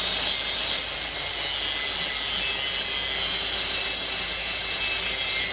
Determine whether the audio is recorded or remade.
recorded